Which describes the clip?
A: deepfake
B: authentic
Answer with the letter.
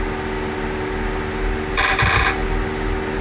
B